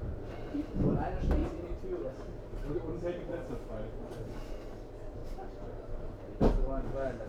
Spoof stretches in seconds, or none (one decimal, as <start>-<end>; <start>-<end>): 1.4-2.1; 5.2-6.4